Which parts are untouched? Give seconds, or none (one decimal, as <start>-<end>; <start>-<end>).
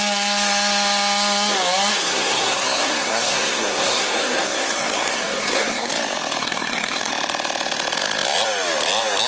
0.0-1.9; 5.9-6.4; 7.1-9.3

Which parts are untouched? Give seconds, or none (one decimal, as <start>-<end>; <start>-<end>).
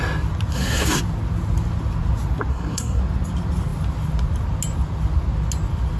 0.0-0.5; 1.0-2.5; 3.0-6.0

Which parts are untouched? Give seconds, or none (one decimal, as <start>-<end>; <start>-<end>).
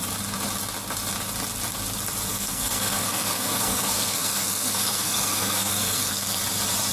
0.0-2.3; 6.4-6.9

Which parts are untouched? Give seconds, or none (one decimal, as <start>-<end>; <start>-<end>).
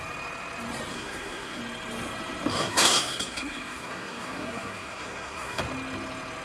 0.0-0.9; 1.6-2.5; 5.6-6.4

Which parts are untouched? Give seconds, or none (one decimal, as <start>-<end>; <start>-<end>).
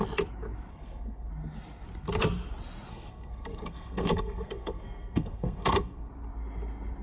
0.0-0.7; 1.3-2.9; 6.1-7.0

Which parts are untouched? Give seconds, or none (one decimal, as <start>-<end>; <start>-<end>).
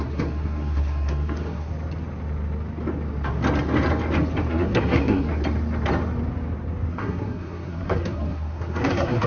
1.7-4.5; 5.3-6.9